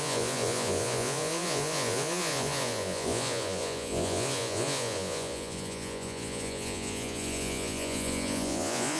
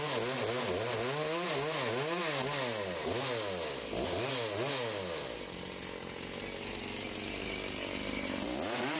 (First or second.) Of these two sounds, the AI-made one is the first